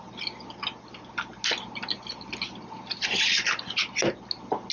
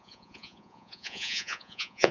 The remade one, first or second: second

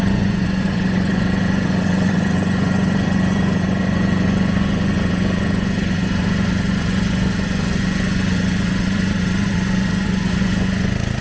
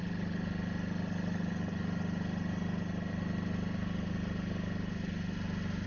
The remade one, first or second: first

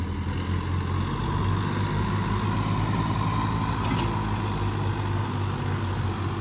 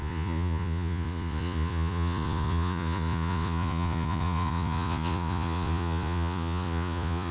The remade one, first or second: second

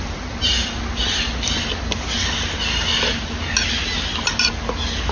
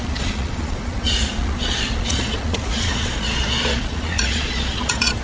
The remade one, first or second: second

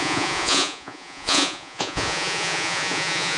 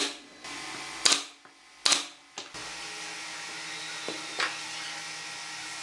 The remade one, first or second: first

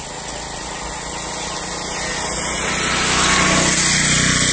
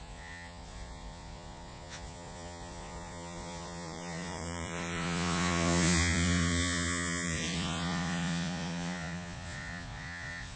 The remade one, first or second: second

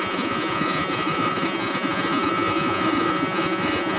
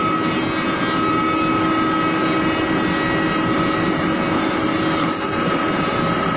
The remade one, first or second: first